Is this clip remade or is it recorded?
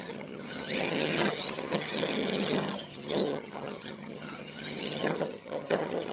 remade